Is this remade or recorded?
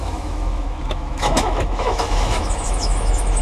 remade